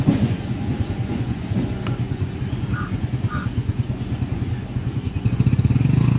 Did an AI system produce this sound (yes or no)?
yes